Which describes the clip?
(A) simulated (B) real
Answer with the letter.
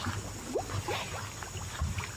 B